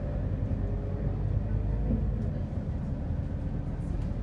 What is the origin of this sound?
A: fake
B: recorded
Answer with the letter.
B